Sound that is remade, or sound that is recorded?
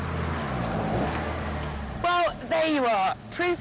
recorded